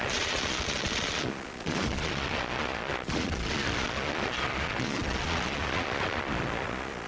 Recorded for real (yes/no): no